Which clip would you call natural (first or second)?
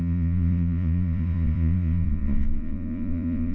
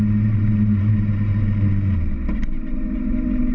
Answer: second